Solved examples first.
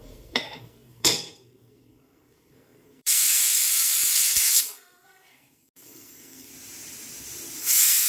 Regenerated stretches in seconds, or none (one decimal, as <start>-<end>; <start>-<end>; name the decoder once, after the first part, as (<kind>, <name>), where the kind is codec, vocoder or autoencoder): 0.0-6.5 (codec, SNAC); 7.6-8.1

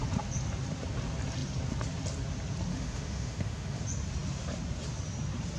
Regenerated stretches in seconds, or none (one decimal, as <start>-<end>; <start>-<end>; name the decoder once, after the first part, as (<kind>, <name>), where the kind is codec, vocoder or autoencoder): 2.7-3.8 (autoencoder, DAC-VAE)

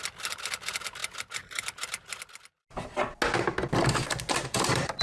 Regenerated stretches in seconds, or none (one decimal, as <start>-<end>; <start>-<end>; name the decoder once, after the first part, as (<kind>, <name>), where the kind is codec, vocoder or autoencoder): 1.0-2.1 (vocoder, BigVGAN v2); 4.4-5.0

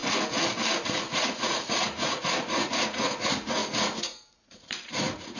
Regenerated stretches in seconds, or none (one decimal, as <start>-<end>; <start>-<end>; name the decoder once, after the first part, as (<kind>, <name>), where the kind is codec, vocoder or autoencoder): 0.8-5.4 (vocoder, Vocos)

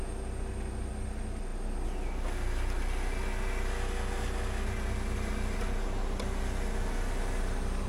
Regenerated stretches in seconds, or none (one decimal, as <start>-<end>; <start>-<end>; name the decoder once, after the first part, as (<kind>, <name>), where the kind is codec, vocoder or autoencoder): none